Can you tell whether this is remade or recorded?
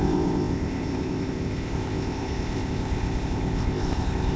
remade